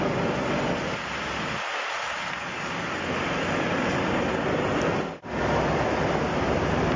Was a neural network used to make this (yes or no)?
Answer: no